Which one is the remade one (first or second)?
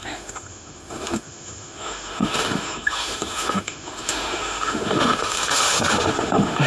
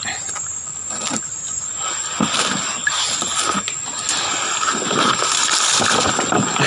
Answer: first